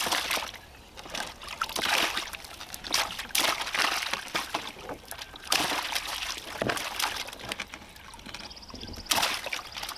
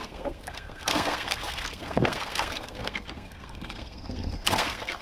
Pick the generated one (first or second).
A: second